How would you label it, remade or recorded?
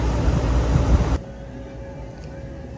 recorded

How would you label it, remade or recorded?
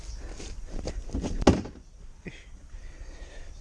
recorded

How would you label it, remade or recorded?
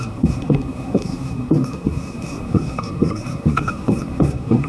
remade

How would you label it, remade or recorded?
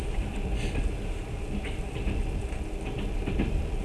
recorded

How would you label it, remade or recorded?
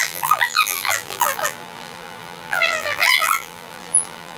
remade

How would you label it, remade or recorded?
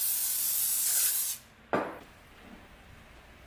recorded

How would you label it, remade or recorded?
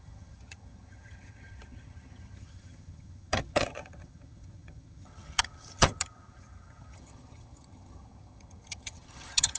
remade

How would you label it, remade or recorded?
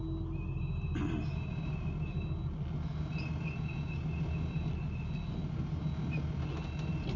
recorded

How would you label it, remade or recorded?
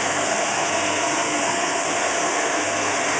remade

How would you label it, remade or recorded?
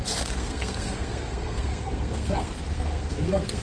remade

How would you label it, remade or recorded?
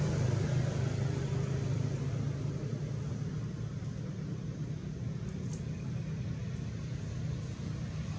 recorded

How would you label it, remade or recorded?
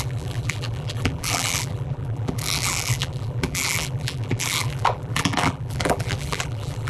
remade